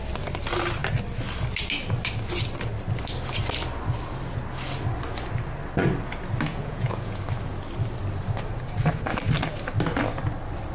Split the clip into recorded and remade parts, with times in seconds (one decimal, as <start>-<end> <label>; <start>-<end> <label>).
0.0-6.5 recorded; 6.5-7.2 remade; 7.2-10.7 recorded